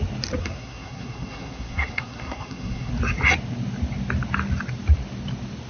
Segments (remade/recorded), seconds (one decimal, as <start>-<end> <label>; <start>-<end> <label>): 0.0-0.4 recorded; 0.4-2.9 remade; 2.9-5.7 recorded